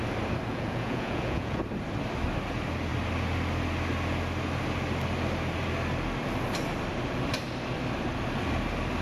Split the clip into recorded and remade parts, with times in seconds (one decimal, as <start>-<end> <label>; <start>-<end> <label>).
0.0-0.5 recorded; 0.5-1.6 remade; 1.6-9.0 recorded